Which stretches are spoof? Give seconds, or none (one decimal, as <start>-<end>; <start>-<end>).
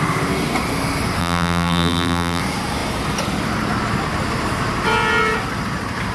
1.2-2.4